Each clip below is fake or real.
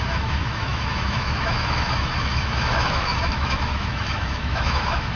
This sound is fake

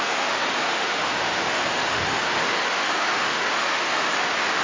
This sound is fake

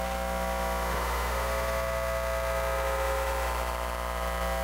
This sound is fake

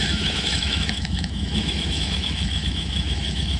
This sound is fake